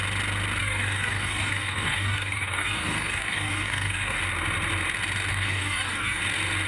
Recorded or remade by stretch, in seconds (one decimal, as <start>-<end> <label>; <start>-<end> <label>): 0.0-0.6 recorded; 0.6-4.2 remade; 4.2-5.3 recorded; 5.3-6.2 remade; 6.2-6.7 recorded